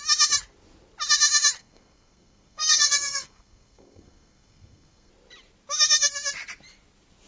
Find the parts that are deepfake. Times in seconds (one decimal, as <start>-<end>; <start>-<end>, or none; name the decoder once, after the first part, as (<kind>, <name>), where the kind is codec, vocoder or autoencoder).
1.6-5.1 (codec, SNAC)